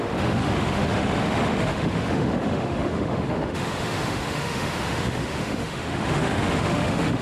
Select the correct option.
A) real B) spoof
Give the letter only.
B